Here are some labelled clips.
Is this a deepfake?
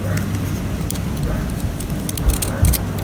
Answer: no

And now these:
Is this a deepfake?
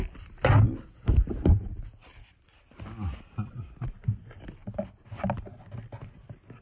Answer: no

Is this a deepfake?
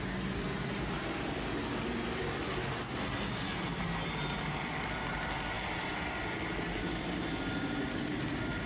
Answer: no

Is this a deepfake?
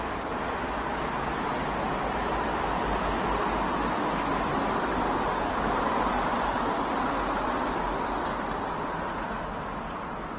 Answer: no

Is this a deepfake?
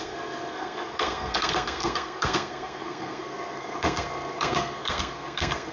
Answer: yes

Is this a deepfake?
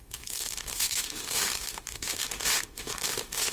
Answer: yes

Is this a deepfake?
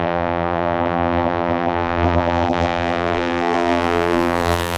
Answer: yes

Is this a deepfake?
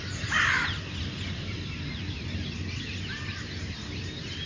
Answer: yes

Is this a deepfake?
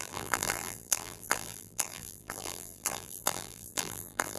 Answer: yes